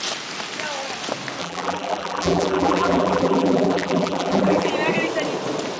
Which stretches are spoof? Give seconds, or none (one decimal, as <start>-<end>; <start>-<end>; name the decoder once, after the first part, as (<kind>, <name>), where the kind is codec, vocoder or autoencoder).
1.4-4.7 (vocoder, BigVGAN v2)